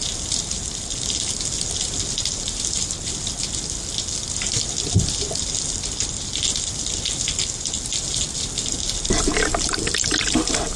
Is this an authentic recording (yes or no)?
yes